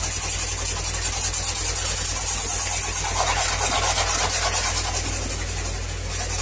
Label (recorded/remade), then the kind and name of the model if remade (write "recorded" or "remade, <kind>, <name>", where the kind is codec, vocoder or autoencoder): recorded